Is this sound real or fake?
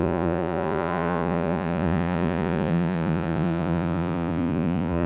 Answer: fake